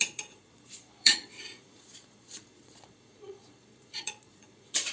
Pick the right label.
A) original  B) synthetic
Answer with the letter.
B